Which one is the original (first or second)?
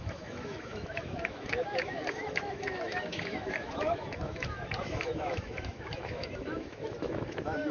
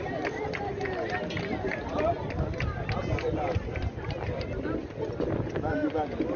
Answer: second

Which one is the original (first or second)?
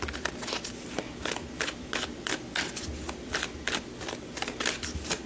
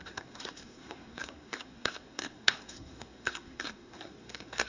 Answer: first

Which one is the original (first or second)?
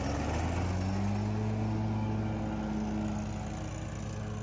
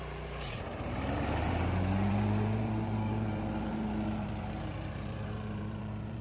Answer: first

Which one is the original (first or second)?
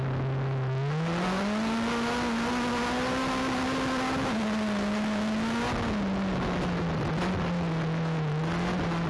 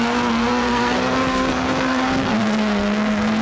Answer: first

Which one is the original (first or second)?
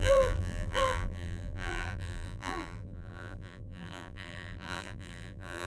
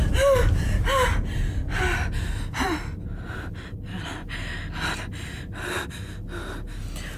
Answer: second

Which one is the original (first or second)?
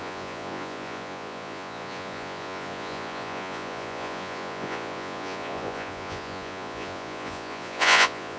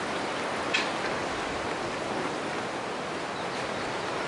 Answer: second